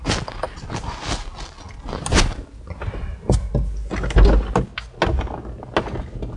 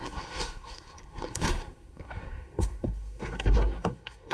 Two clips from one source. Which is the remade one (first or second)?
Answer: second